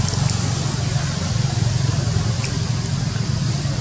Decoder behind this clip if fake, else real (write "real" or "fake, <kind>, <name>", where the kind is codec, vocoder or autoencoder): real